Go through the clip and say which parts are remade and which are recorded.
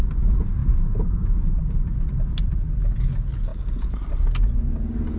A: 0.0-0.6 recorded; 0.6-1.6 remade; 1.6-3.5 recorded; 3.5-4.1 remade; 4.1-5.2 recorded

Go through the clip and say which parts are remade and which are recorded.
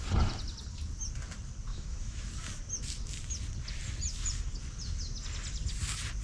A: 0.0-1.7 recorded; 1.7-2.3 remade; 2.3-6.2 recorded